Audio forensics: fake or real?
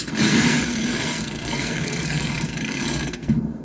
fake